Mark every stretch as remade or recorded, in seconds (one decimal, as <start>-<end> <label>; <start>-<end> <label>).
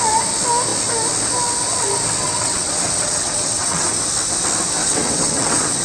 0.0-2.2 recorded; 2.2-4.0 remade; 4.0-4.8 recorded; 4.8-5.8 remade